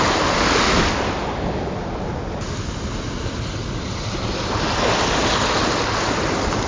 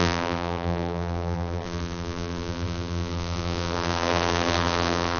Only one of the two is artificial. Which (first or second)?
second